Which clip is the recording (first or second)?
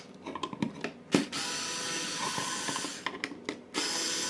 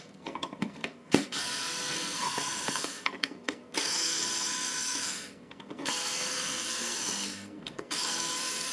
first